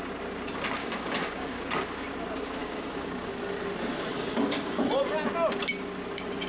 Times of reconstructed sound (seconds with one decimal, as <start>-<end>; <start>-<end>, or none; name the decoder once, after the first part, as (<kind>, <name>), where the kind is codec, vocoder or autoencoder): 0.8-1.6 (codec, DAC); 2.6-3.3; 4.1-5.0